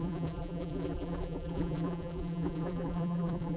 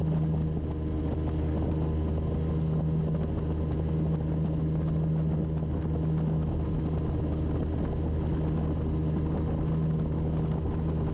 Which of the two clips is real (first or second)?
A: second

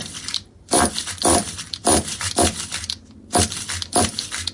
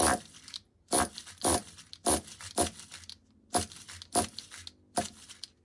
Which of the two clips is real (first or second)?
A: second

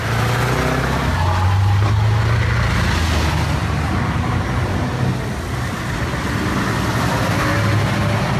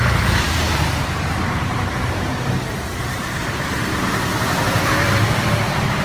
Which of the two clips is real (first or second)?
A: first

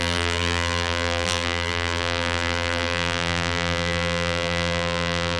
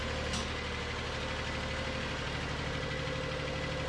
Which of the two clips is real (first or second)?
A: second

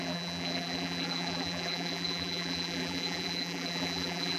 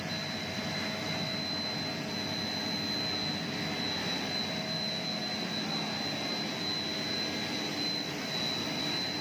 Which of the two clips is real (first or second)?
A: second